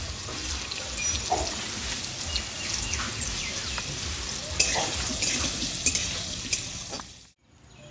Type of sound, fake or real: real